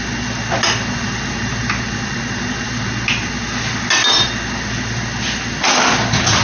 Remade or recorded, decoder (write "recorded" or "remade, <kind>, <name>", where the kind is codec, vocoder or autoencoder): recorded